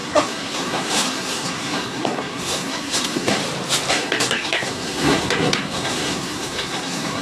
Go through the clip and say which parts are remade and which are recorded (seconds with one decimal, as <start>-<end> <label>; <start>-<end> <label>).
0.0-3.4 remade; 3.4-3.9 recorded; 3.9-7.2 remade